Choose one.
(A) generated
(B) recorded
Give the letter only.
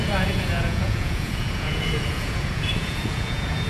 A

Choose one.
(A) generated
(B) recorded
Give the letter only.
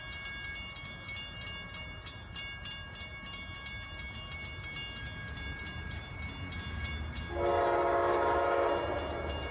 B